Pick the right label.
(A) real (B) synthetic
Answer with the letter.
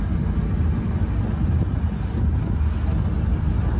A